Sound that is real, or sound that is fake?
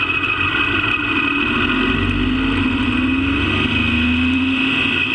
real